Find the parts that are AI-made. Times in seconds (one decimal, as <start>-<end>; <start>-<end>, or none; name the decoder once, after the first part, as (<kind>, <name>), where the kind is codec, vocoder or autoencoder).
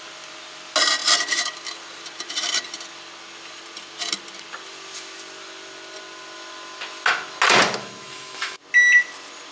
7.8-8.6 (autoencoder, DAC-VAE)